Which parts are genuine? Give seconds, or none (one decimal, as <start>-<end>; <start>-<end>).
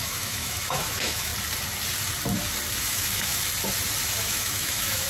1.3-2.8; 3.5-4.2